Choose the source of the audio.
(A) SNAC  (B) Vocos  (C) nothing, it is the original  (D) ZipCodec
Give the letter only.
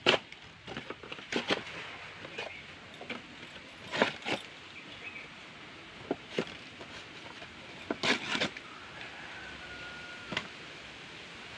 C